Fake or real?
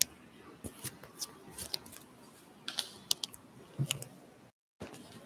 real